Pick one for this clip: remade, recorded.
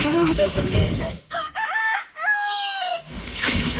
remade